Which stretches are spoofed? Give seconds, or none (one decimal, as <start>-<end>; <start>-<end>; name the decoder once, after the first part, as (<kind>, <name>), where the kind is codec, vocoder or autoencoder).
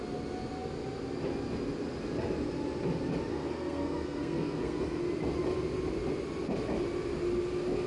3.3-5.0 (codec, SNAC)